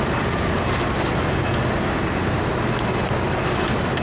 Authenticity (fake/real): real